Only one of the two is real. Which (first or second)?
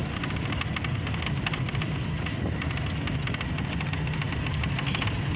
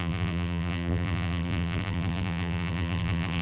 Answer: first